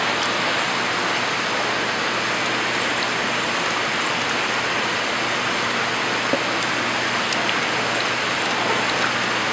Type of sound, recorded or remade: recorded